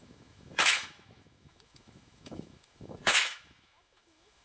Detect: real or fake fake